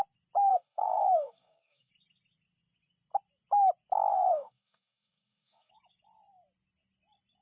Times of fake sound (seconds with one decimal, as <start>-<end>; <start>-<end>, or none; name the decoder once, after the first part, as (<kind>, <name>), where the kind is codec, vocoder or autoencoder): 0.5-1.9 (codec, DAC); 4.1-5.7